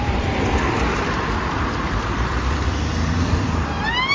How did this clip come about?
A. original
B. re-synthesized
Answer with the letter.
B